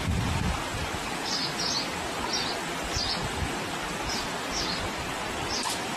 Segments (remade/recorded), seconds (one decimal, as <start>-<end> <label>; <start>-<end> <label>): 0.0-6.0 recorded